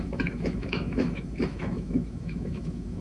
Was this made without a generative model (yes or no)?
no